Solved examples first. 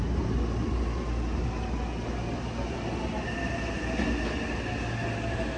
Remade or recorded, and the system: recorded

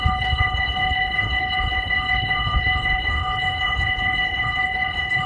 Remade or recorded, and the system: remade, codec, HILCodec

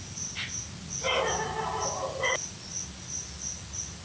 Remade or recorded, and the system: recorded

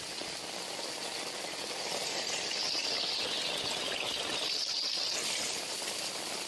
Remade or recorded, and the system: recorded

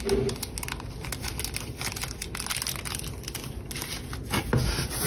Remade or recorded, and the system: recorded